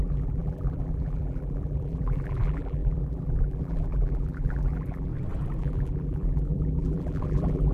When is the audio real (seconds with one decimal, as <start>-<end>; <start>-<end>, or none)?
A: 5.1-5.6